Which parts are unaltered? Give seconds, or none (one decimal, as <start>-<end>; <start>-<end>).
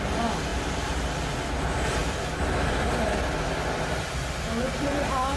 0.0-5.4